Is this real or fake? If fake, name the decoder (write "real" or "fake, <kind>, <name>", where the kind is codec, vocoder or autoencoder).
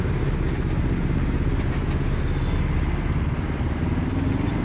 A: real